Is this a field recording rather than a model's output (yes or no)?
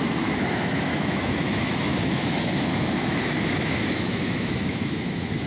no